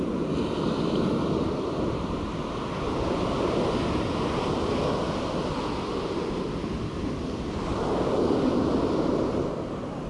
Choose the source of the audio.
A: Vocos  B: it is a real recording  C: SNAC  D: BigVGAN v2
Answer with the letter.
B